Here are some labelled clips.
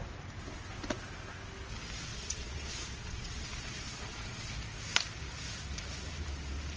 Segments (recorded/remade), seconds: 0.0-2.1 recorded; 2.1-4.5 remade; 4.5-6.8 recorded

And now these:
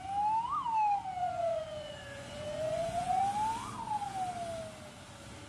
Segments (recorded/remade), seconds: 0.0-1.2 recorded; 1.2-3.2 remade; 3.2-5.5 recorded

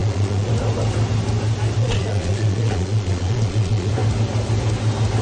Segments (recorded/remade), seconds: 0.0-0.5 remade; 0.5-1.8 recorded; 1.8-3.9 remade; 3.9-5.2 recorded

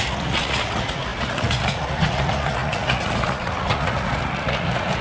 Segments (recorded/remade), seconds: 0.0-5.0 remade

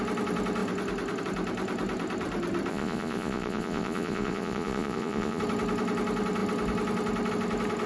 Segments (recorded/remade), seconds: 0.0-2.7 recorded; 2.7-5.4 remade; 5.4-7.9 recorded

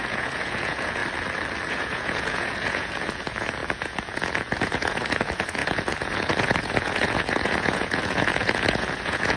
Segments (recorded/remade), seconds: 0.0-1.0 remade; 1.0-1.7 recorded; 1.7-9.4 remade

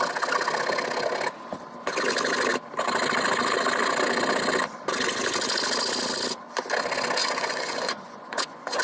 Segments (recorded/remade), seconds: 0.0-7.2 recorded; 7.2-8.8 remade

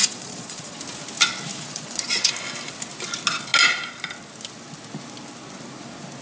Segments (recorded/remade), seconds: 0.0-0.8 remade; 0.8-1.5 recorded; 1.5-2.3 remade; 2.3-6.2 recorded